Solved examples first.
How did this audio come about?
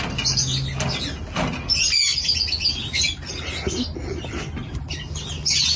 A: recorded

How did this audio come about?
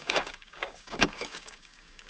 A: remade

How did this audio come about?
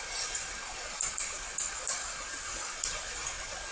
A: remade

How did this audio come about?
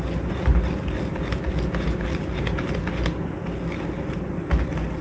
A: recorded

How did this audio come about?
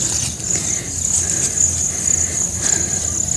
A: recorded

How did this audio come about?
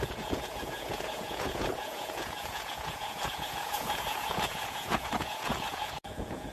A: remade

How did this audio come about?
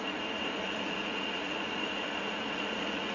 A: remade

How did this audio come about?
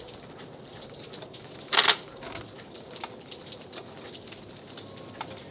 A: recorded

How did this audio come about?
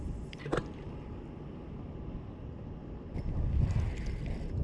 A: recorded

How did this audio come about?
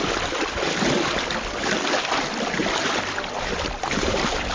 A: recorded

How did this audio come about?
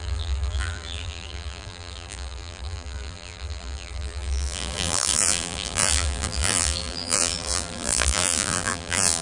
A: remade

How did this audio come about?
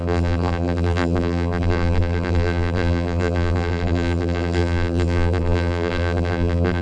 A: remade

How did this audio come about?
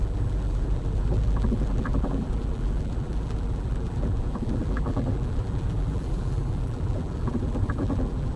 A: remade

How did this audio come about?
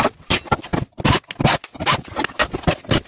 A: recorded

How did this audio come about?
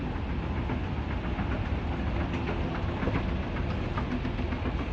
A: recorded